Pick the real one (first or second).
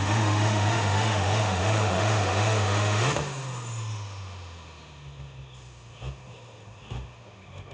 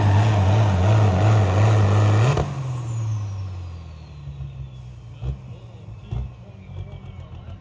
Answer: second